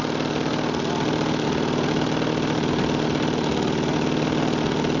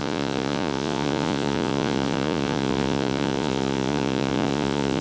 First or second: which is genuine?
first